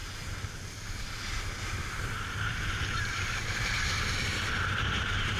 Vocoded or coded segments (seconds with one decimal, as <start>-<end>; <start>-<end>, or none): 2.1-5.4